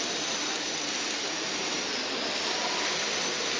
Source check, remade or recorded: recorded